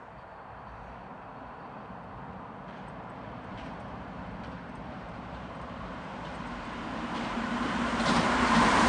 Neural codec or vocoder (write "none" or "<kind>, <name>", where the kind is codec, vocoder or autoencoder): vocoder, BigVGAN v2